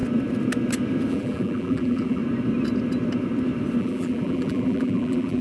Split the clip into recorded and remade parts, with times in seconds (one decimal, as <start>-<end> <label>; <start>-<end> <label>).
0.0-1.1 recorded; 1.1-2.2 remade; 2.2-3.8 recorded; 3.8-5.4 remade